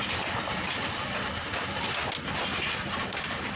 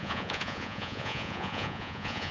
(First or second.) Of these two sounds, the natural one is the first